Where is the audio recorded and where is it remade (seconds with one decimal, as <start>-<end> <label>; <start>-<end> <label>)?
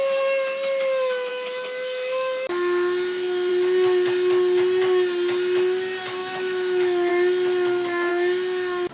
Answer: 0.0-1.3 recorded; 1.3-3.5 remade; 3.5-6.2 recorded; 6.2-7.1 remade; 7.1-8.1 recorded; 8.1-8.9 remade